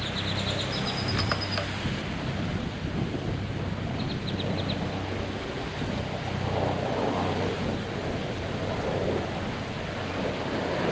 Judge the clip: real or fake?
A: real